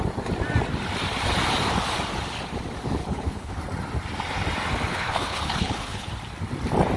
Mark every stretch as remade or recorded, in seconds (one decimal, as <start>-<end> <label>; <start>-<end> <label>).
0.0-3.0 recorded; 3.0-3.6 remade; 3.6-4.9 recorded; 4.9-6.1 remade; 6.1-7.0 recorded